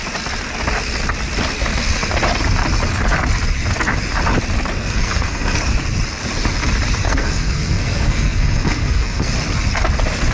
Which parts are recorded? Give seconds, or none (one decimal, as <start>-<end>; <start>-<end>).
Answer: 0.0-4.7; 5.6-7.0; 9.3-10.3